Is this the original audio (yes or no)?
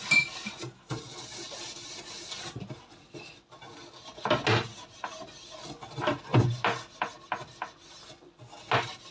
yes